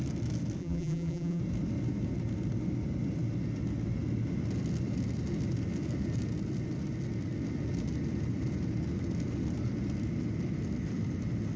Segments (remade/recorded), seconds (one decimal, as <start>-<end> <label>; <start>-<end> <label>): 0.0-0.6 recorded; 0.6-1.4 remade; 1.4-11.6 recorded